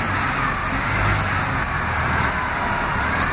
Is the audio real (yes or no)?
yes